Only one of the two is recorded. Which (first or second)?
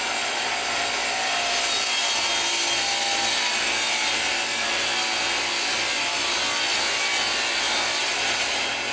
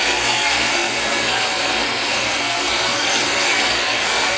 first